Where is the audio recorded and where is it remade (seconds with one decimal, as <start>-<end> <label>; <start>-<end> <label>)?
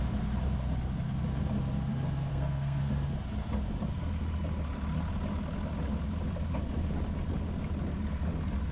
0.0-2.3 recorded; 2.3-2.9 remade; 2.9-8.7 recorded